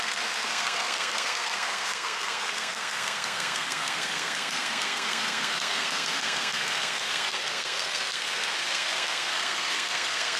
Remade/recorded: remade